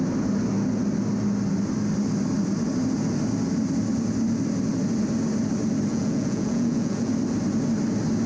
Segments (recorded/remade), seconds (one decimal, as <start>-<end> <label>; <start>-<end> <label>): 0.0-5.9 recorded; 5.9-7.1 remade; 7.1-8.3 recorded